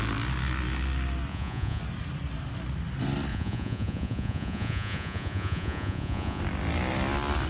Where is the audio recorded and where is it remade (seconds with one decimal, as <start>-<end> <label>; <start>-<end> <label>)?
0.0-1.3 recorded; 1.3-1.8 remade; 1.8-3.3 recorded; 3.3-6.4 remade; 6.4-7.5 recorded